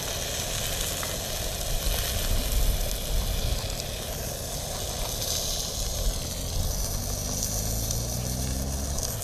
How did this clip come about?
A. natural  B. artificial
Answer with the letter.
A